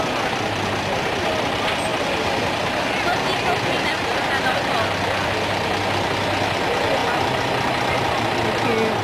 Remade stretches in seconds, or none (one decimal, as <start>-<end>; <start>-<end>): none